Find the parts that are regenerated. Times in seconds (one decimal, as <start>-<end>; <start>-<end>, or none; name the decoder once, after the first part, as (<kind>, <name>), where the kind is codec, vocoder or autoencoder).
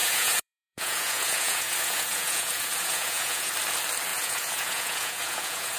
0.0-3.5 (vocoder, Vocos); 4.1-5.8